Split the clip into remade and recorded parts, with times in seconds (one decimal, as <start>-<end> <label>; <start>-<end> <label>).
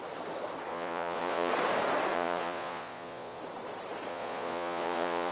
0.0-0.7 recorded; 0.7-1.5 remade; 1.5-2.1 recorded; 2.1-3.4 remade; 3.4-4.1 recorded; 4.1-5.3 remade